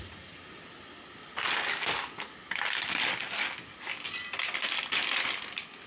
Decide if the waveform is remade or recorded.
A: recorded